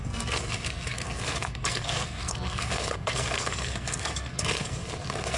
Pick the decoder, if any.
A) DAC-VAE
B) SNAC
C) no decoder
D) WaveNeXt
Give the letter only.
B